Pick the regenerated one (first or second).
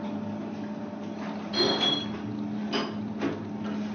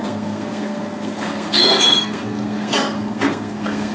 second